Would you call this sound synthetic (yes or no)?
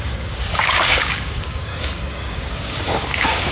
yes